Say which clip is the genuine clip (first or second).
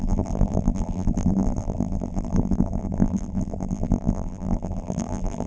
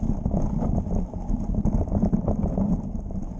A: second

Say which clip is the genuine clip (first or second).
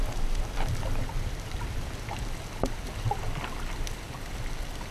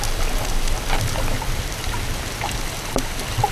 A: second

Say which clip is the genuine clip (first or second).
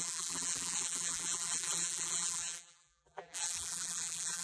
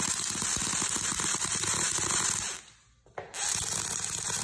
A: second